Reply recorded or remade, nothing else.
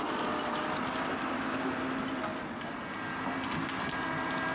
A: recorded